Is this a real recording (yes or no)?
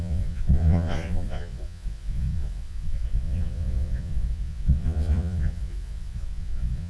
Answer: no